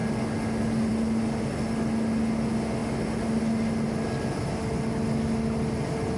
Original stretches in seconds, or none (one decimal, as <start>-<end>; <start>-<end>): 0.0-6.2